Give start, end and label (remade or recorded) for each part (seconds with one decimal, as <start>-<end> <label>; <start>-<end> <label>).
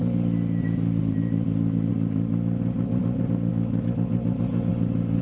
0.0-1.0 recorded; 1.0-1.9 remade; 1.9-5.2 recorded